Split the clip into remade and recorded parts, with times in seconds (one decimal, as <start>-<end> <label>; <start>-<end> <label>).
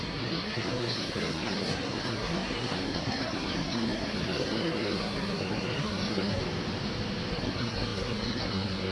0.0-6.4 remade; 6.4-7.3 recorded; 7.3-8.9 remade